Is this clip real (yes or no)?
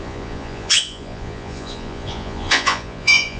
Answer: no